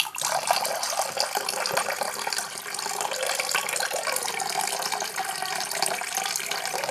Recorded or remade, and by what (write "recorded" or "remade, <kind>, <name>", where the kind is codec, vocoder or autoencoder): recorded